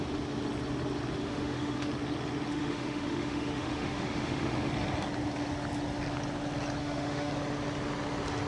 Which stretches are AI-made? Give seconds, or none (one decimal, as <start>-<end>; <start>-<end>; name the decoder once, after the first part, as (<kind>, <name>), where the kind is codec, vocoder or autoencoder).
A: 1.2-1.9 (autoencoder, DAC-VAE); 2.5-4.7; 6.8-7.3